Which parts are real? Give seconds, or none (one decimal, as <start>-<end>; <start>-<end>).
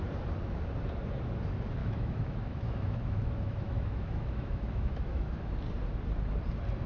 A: 0.0-1.8; 5.5-6.9